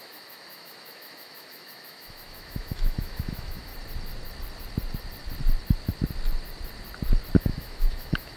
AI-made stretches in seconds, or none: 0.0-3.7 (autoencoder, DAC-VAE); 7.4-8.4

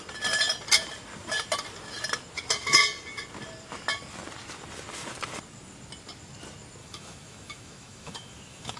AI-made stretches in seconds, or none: 6.8-8.8 (autoencoder, DAC-VAE)

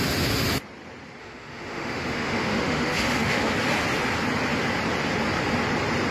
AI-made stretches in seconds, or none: 1.2-3.5 (autoencoder, DAC-VAE)

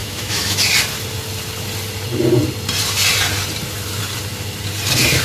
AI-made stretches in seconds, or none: 0.0-0.7 (autoencoder, DAC-VAE)

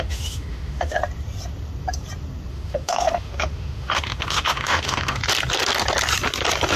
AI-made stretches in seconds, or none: 0.0-1.0 (autoencoder, DAC-VAE); 2.5-5.2

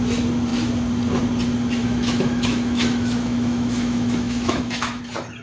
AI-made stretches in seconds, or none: 1.8-5.0 (autoencoder, DAC-VAE)

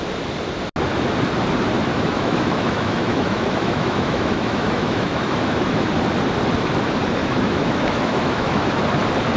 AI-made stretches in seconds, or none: 1.9-5.9 (autoencoder, DAC-VAE); 7.2-8.8